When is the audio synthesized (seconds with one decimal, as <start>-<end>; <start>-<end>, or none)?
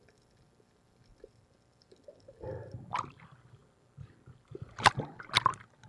none